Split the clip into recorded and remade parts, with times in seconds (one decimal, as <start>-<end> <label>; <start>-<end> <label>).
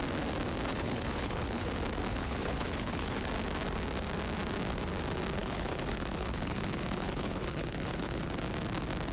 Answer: 0.0-0.7 recorded; 0.7-1.7 remade; 1.7-2.1 recorded; 2.1-3.3 remade; 3.3-5.4 recorded; 5.4-8.2 remade; 8.2-9.1 recorded